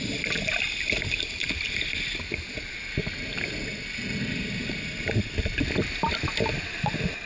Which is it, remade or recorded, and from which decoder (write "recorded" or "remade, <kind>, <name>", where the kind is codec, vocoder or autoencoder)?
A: recorded